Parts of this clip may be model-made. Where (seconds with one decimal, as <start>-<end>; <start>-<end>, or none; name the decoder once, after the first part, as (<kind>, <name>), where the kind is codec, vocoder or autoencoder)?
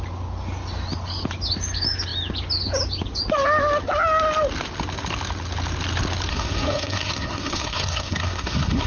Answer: 6.3-8.9 (codec, SNAC)